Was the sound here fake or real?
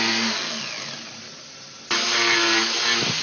real